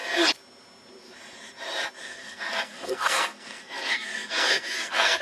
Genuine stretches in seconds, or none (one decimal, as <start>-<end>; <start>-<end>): 0.0-2.0